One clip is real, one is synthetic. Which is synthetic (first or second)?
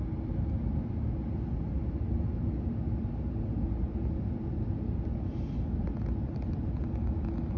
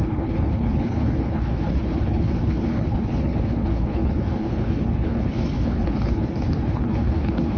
second